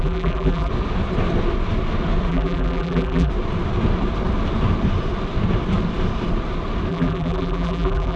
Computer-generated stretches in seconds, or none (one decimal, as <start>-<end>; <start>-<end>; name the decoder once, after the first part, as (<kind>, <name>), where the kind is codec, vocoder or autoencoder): 0.0-0.7 (vocoder, BigVGAN v2); 2.3-3.3; 6.9-8.2